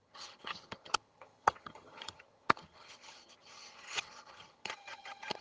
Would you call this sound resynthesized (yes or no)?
yes